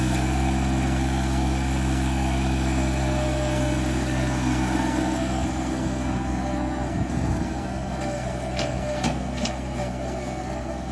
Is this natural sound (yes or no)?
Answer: no